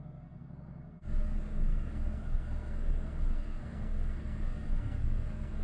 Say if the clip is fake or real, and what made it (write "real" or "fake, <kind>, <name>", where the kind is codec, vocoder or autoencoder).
fake, codec, SNAC